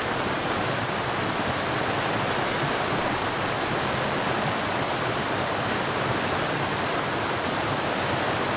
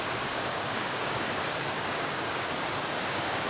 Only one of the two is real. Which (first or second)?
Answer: first